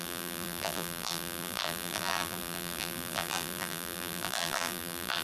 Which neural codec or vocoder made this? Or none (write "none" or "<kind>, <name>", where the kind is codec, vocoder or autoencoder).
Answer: vocoder, BigVGAN v2